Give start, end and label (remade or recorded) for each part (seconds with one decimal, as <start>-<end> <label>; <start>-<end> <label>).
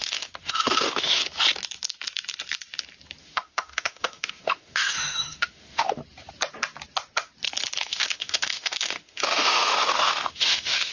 0.0-1.2 remade; 1.2-3.2 recorded; 3.2-6.0 remade; 6.0-7.8 recorded; 7.8-10.9 remade